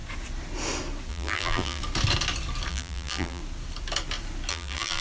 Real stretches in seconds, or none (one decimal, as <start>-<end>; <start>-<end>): 0.0-1.1; 1.8-2.7; 3.4-4.5